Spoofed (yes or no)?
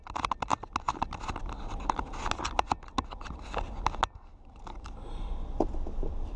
no